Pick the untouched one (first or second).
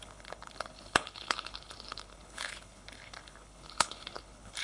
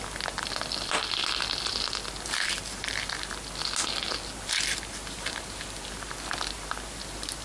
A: second